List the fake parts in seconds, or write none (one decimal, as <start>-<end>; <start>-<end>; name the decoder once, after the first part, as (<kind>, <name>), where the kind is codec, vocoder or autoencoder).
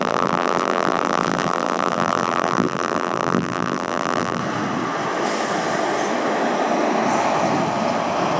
0.0-4.4 (vocoder, BigVGAN v2)